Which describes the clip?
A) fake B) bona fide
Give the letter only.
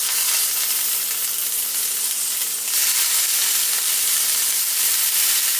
B